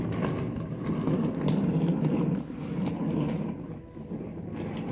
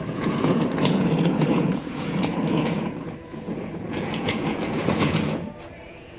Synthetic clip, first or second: second